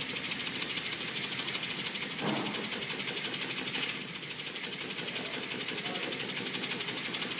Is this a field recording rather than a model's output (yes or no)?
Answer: yes